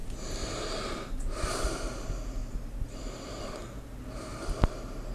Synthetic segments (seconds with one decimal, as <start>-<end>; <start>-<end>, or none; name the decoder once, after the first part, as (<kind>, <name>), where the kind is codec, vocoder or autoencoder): 2.4-3.4 (vocoder, BigVGAN v2)